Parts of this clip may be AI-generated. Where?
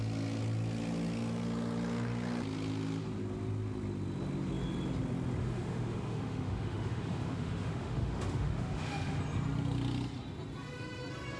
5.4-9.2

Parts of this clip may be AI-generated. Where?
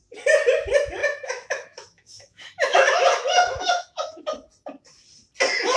1.0-4.2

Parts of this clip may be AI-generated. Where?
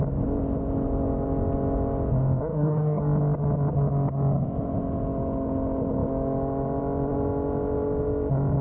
2.5-3.0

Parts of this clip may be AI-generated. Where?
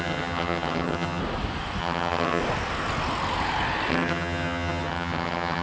0.0-1.2; 1.8-2.4; 3.9-5.6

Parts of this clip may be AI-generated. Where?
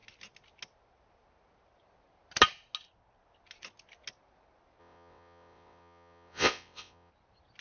4.8-7.1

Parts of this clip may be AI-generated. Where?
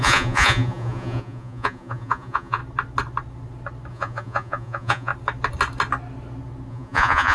0.0-2.6; 3.9-5.1; 6.7-7.3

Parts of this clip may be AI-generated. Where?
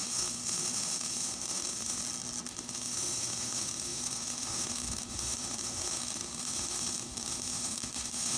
0.0-2.0; 2.5-8.4